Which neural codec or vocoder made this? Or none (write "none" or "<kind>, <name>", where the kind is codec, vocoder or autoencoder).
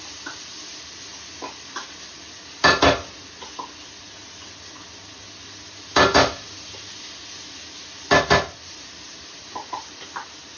none